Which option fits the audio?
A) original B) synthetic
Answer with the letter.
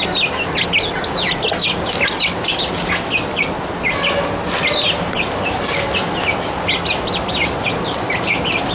A